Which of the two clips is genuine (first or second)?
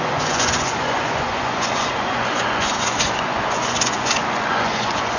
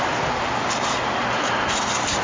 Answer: second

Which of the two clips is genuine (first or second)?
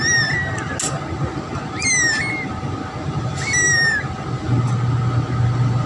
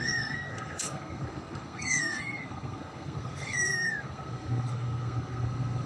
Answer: first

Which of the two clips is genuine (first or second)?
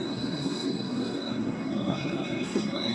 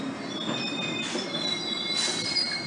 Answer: second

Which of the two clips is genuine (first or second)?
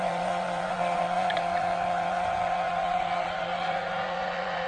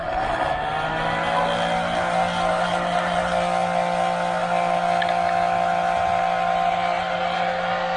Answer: second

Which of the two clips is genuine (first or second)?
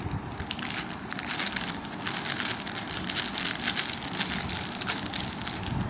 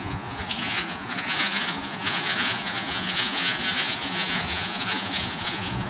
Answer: first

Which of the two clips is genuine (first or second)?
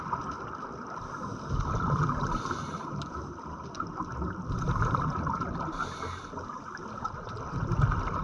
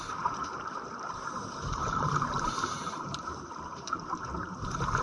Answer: first